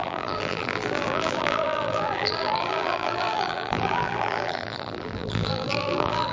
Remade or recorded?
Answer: remade